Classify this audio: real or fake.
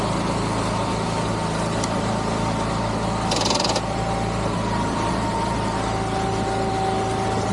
real